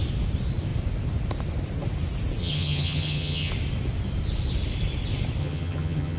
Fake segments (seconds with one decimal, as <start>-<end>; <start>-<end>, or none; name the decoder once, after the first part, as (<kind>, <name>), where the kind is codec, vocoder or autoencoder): 2.4-3.5 (vocoder, HiFi-GAN); 5.4-6.2

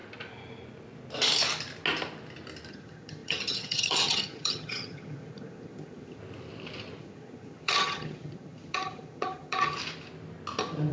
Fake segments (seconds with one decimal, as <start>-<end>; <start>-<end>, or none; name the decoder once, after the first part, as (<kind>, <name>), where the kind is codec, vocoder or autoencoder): 2.7-6.2 (vocoder, HiFi-GAN); 7.0-9.8

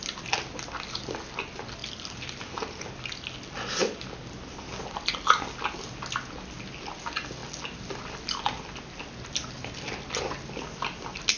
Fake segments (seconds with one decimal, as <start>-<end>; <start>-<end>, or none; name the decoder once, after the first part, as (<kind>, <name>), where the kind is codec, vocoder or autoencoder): none

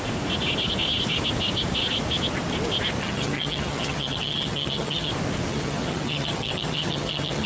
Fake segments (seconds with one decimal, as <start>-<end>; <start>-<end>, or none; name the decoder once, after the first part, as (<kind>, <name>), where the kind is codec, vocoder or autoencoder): 3.0-5.1 (vocoder, HiFi-GAN); 5.5-7.5

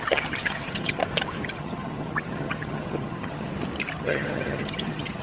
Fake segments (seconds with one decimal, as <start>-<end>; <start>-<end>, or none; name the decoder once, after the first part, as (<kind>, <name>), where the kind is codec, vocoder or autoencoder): 0.0-1.0 (vocoder, HiFi-GAN); 1.6-3.5; 4.0-5.2

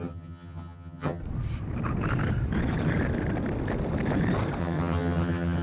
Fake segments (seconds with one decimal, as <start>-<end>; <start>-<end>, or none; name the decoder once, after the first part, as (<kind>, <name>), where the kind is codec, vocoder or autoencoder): 0.0-1.2 (vocoder, HiFi-GAN); 4.6-5.6